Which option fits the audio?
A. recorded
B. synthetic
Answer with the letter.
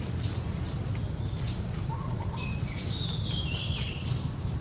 A